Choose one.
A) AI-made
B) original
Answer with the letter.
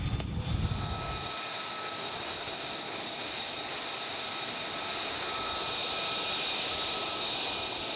B